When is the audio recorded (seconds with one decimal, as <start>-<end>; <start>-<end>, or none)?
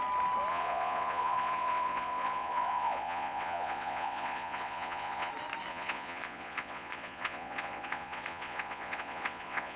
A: 0.0-0.5; 5.3-5.7